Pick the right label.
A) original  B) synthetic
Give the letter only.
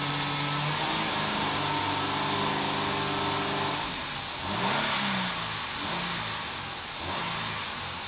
A